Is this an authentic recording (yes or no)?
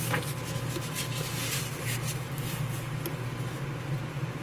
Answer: yes